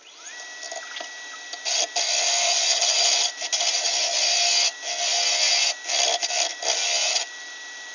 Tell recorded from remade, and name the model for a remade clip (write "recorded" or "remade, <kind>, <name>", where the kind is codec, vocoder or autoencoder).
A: recorded